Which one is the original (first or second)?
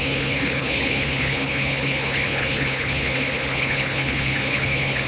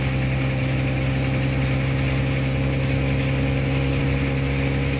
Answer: second